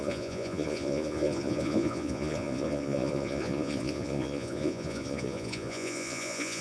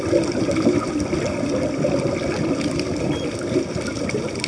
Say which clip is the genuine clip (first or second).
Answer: second